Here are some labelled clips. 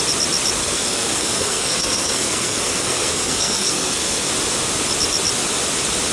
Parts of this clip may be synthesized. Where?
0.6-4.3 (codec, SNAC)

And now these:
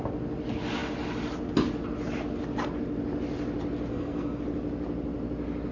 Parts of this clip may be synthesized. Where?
3.9-4.4 (codec, SNAC)